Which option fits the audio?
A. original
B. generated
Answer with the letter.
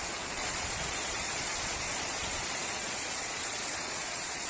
B